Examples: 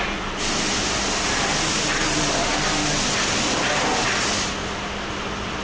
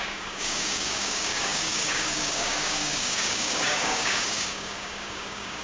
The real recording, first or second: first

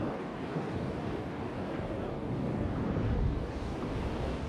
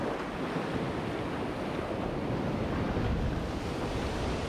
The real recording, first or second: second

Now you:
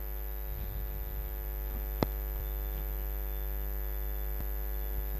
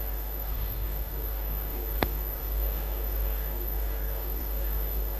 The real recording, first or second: first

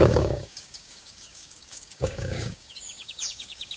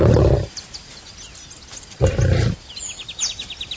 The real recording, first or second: second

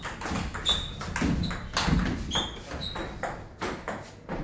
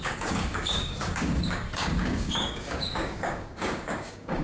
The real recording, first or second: first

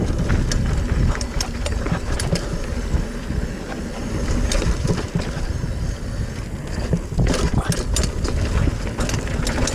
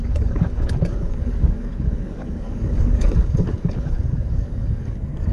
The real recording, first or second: first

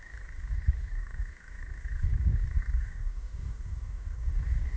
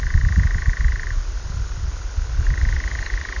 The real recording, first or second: second